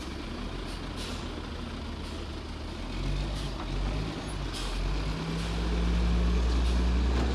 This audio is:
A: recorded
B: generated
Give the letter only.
A